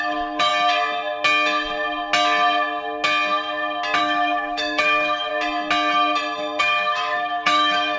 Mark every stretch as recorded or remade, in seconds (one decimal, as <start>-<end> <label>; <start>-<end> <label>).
0.0-0.5 remade; 0.5-4.0 recorded; 4.0-5.3 remade; 5.3-6.6 recorded; 6.6-8.0 remade